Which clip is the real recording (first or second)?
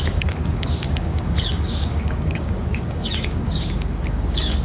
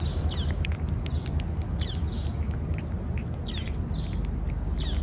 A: second